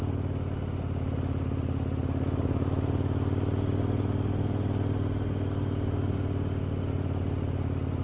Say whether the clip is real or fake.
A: real